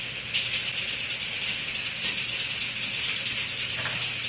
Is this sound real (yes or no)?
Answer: yes